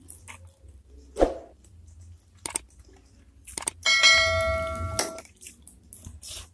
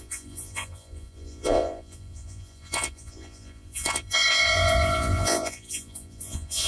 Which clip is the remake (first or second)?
second